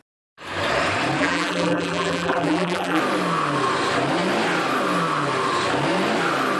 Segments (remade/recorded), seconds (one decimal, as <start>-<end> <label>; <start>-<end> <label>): 0.0-1.2 recorded; 1.2-3.0 remade; 3.0-6.6 recorded